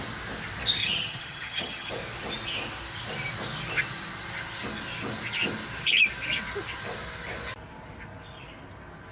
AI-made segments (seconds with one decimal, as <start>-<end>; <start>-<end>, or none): 0.8-1.9